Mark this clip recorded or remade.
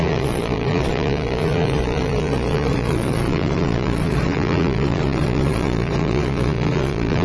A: remade